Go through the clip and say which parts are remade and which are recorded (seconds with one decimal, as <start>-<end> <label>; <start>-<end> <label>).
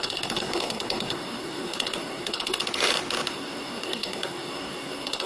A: 0.0-2.6 remade; 2.6-3.3 recorded; 3.3-5.3 remade